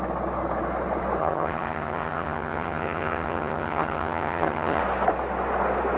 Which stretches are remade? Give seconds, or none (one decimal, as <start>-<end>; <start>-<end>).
1.2-4.8